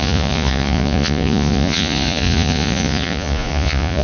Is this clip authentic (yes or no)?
no